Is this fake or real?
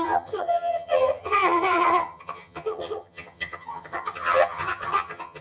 fake